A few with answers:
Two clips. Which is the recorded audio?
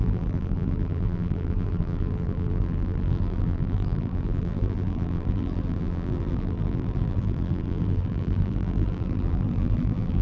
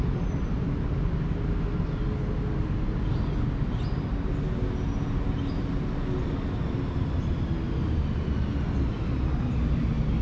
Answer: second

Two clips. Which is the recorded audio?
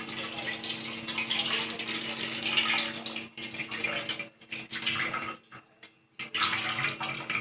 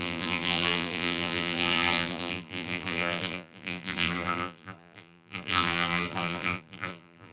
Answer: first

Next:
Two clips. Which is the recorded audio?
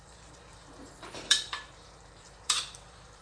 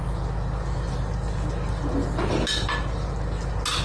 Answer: second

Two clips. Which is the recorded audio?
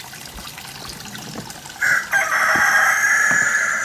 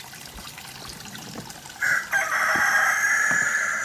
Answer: first